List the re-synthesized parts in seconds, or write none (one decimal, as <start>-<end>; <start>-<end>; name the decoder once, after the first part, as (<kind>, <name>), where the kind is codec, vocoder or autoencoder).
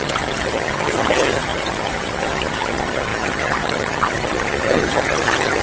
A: 0.0-5.6 (vocoder, HiFi-GAN)